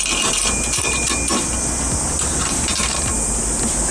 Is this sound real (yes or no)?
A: yes